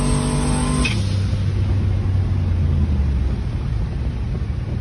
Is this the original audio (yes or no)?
yes